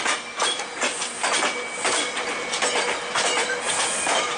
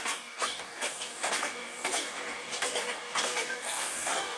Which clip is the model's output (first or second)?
second